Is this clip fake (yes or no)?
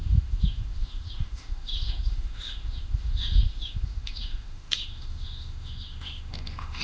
yes